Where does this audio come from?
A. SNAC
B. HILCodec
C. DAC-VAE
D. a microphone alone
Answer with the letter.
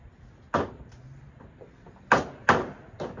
D